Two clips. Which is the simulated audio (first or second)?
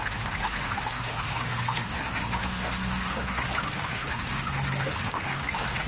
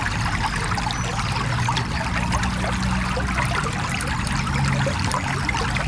first